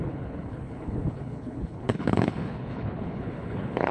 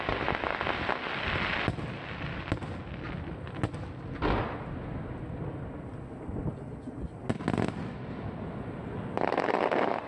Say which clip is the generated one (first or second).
first